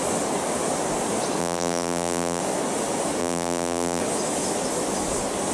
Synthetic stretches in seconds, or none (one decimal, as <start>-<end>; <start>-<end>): 1.4-2.4; 3.2-4.0